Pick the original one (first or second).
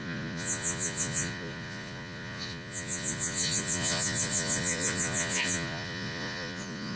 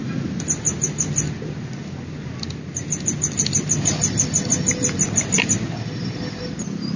second